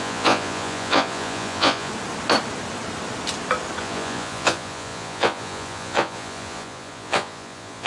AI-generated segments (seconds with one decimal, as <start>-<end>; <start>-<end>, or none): 0.0-1.9; 3.8-7.9